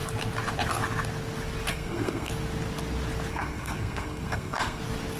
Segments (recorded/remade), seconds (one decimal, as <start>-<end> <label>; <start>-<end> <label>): 0.0-1.7 recorded; 1.7-2.3 remade; 2.3-3.3 recorded; 3.3-4.8 remade; 4.8-5.2 recorded